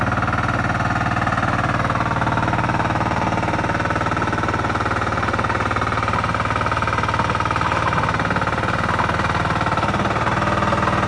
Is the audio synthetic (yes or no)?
no